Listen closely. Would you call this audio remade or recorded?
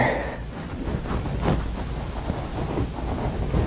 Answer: recorded